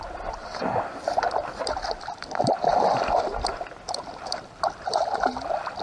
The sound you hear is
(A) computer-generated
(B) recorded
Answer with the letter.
B